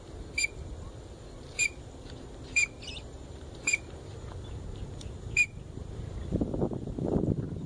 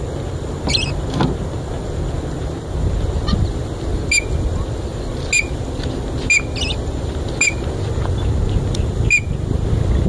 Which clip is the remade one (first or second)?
first